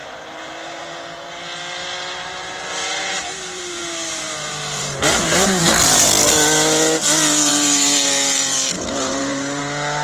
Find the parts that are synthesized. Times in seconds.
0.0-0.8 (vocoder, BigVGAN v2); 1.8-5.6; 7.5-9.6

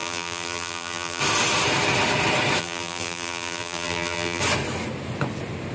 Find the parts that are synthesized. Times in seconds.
0.0-1.2 (vocoder, BigVGAN v2); 2.6-4.4

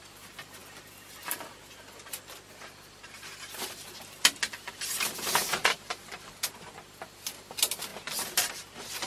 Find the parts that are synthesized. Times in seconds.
5.4-5.9 (vocoder, BigVGAN v2); 7.9-8.5